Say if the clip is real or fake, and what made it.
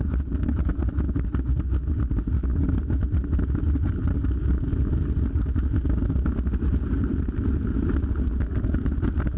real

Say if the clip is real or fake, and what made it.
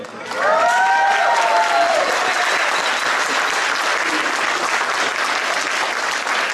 real